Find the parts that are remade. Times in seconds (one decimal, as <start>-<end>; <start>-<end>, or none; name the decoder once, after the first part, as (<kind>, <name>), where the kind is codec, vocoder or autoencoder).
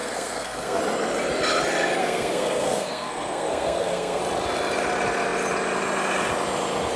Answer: 0.0-0.8 (codec, SNAC); 2.0-4.2